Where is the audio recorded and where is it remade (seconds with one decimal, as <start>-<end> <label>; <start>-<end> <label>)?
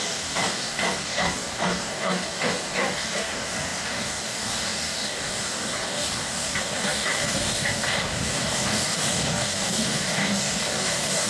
0.0-11.3 remade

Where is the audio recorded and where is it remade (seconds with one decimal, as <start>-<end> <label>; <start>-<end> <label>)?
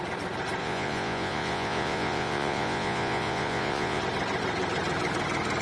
0.0-0.6 recorded; 0.6-4.0 remade; 4.0-5.6 recorded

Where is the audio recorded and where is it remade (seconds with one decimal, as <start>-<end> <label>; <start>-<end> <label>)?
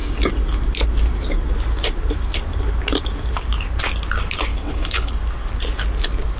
0.0-4.5 recorded; 4.5-5.1 remade; 5.1-6.4 recorded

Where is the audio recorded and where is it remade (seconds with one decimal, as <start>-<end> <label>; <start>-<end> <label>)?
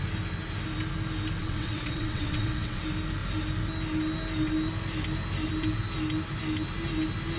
0.0-1.4 recorded; 1.4-2.8 remade; 2.8-7.4 recorded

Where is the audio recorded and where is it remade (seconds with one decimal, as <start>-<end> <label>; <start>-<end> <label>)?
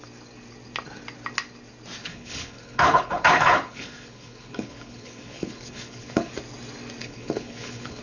0.0-2.0 recorded; 2.0-6.3 remade; 6.3-7.0 recorded; 7.0-8.0 remade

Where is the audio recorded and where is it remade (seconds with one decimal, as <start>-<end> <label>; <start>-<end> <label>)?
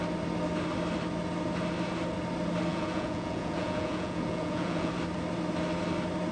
0.0-2.7 recorded; 2.7-4.9 remade; 4.9-6.3 recorded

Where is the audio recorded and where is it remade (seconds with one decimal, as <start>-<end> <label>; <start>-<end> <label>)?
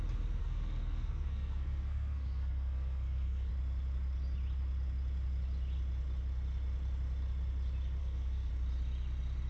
0.0-0.4 recorded; 0.4-3.5 remade; 3.5-8.0 recorded; 8.0-8.5 remade; 8.5-9.5 recorded